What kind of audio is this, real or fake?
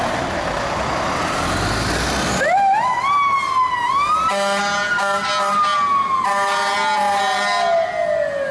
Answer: real